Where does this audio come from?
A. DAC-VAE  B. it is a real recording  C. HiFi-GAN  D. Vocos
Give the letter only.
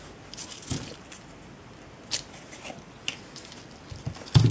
B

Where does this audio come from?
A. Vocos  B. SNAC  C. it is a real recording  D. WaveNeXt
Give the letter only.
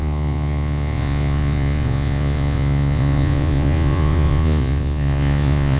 A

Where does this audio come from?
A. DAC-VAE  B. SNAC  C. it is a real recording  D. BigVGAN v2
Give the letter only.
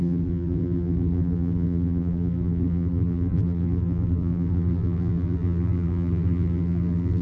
D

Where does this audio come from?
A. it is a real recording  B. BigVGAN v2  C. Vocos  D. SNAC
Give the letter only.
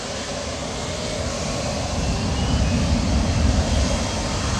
A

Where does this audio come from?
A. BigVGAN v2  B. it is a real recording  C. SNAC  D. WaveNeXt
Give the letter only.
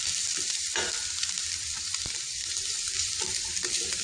A